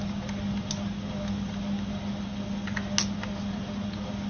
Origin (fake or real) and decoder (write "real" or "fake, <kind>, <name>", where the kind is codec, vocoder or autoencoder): real